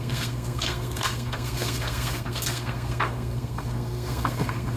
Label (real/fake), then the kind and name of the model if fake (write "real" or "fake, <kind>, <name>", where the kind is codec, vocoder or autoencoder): fake, codec, SNAC